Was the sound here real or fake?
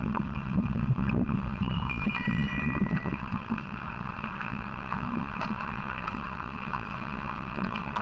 fake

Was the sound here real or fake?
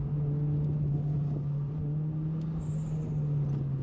real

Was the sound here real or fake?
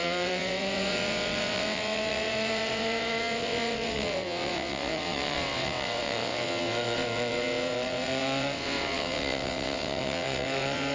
fake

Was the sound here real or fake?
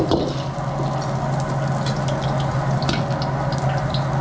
real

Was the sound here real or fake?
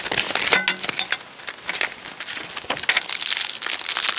real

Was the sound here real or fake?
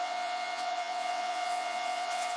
fake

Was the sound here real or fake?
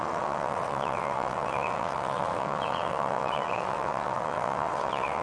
fake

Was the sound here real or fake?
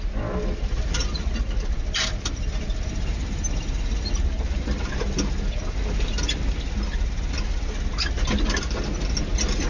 real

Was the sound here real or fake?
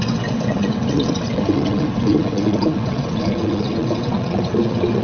fake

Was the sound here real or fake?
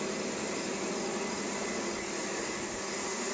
real